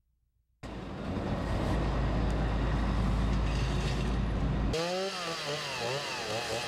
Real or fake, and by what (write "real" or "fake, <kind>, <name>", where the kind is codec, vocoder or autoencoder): real